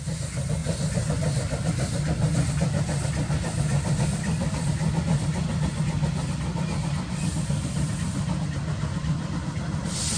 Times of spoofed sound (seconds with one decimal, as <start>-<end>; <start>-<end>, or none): none